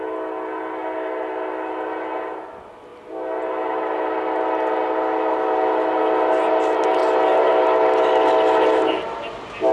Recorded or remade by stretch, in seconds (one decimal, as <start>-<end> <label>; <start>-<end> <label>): 0.0-9.7 recorded